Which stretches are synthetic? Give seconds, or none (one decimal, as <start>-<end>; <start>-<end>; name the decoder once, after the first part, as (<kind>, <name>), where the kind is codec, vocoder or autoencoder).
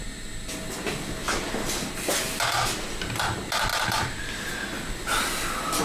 3.7-4.2 (vocoder, BigVGAN v2)